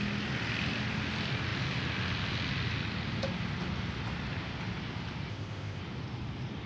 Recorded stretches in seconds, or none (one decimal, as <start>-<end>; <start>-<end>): 0.0-5.3; 5.8-6.7